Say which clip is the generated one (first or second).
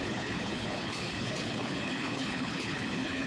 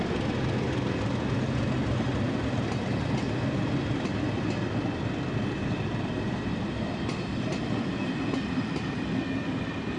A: first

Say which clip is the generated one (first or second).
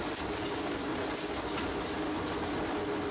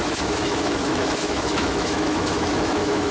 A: second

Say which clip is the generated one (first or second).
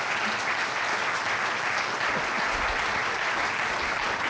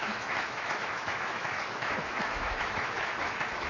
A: second